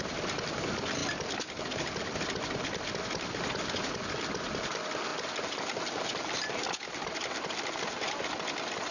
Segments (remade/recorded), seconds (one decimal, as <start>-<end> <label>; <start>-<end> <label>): 0.0-8.9 recorded

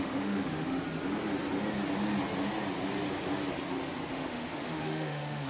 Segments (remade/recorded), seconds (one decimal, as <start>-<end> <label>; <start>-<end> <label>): 0.0-0.8 remade; 0.8-4.1 recorded; 4.1-5.5 remade

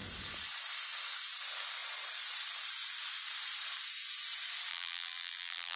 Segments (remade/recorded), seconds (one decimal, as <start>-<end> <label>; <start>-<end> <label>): 0.0-4.7 recorded; 4.7-5.8 remade

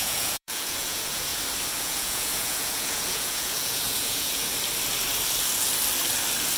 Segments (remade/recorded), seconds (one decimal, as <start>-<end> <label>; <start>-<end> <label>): 0.0-1.3 remade; 1.3-1.8 recorded; 1.8-4.5 remade; 4.5-6.6 recorded

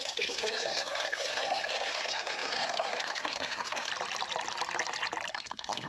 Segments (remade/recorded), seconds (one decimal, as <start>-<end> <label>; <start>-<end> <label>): 0.0-3.9 remade; 3.9-5.3 recorded; 5.3-5.9 remade